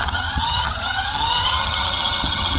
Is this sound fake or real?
fake